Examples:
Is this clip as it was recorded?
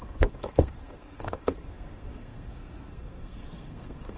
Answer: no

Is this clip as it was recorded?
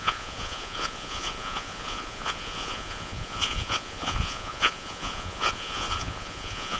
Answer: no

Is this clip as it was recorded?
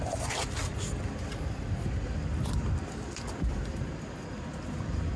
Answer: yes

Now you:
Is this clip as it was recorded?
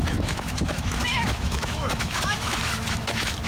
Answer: no